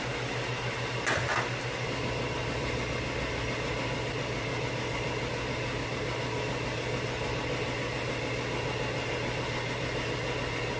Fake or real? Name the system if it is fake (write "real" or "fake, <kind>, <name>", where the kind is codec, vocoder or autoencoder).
real